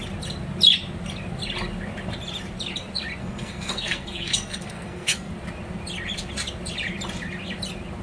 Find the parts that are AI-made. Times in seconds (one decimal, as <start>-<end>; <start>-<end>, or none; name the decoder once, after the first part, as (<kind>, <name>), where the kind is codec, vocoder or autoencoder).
3.2-5.3 (codec, SNAC)